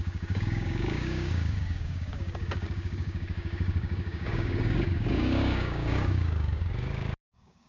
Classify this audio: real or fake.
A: fake